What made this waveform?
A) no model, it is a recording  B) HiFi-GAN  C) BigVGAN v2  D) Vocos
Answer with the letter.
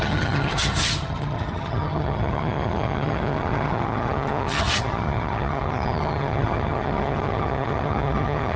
B